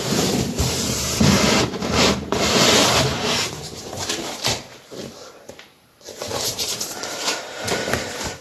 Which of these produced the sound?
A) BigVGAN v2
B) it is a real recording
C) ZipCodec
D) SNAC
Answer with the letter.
A